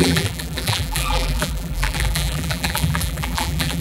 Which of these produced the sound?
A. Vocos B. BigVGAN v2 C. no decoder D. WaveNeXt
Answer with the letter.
B